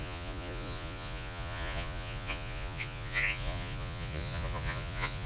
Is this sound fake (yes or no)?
yes